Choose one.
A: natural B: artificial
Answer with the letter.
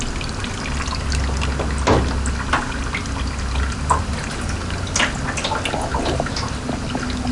A